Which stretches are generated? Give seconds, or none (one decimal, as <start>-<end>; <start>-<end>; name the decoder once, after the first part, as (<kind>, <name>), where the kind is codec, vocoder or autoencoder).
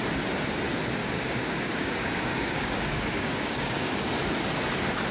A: 1.0-4.1 (codec, DAC)